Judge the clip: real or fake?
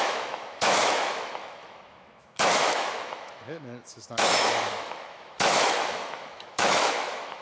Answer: fake